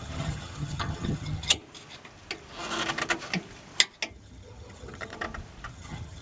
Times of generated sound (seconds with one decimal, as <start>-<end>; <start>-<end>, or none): 0.0-1.6; 4.1-5.1; 5.7-6.2